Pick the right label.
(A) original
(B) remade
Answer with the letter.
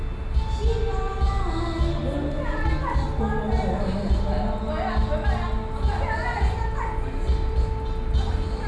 A